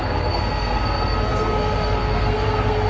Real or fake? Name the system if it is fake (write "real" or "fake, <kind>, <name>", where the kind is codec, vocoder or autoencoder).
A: fake, codec, SNAC